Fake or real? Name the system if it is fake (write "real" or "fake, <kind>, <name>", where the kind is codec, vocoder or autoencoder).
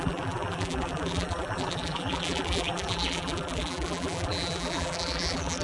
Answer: fake, vocoder, BigVGAN v2